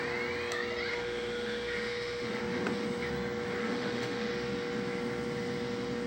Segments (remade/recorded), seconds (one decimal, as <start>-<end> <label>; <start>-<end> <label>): 0.0-0.9 recorded; 0.9-2.4 remade; 2.4-3.6 recorded; 3.6-4.3 remade; 4.3-6.1 recorded